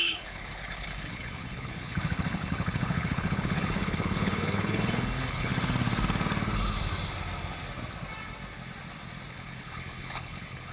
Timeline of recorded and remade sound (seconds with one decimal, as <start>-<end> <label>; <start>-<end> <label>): 0.0-5.5 remade; 5.5-9.3 recorded; 9.3-10.7 remade